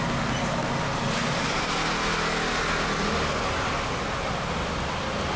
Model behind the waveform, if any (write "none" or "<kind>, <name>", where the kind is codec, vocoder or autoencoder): none